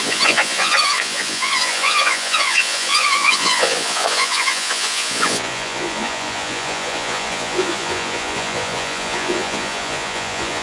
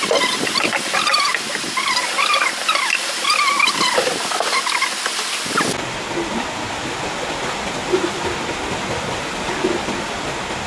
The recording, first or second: second